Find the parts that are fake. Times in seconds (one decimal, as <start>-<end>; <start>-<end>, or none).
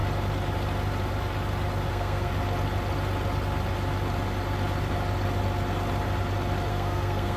1.9-2.3; 6.7-7.4